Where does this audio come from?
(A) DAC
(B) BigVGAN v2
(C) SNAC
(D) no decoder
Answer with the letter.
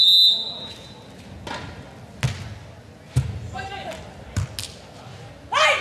D